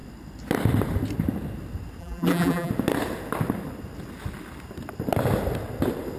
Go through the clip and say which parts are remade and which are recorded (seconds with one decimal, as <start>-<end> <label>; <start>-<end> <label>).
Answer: 0.0-2.0 recorded; 2.0-2.7 remade; 2.7-6.2 recorded